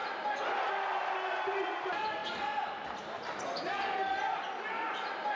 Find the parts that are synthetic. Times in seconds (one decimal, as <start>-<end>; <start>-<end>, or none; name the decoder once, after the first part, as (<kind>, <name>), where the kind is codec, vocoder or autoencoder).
none